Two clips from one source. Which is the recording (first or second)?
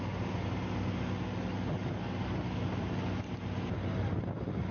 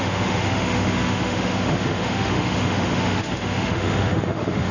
first